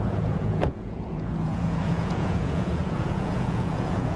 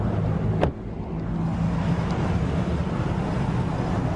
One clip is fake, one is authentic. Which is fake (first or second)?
first